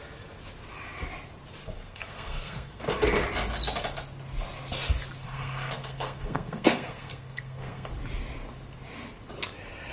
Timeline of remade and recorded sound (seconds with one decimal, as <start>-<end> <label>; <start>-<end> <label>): 0.0-1.6 recorded; 1.6-2.8 remade; 2.8-5.2 recorded; 5.2-7.9 remade; 7.9-9.9 recorded